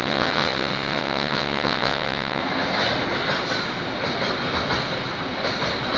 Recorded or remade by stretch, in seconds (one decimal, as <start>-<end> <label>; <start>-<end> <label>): 0.0-2.4 remade; 2.4-6.0 recorded